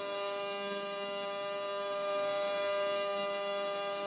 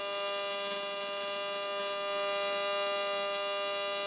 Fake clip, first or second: first